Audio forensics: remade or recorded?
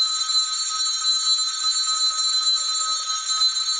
recorded